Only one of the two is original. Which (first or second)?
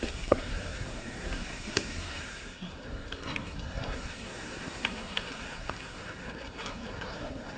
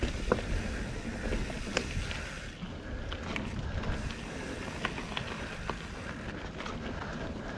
second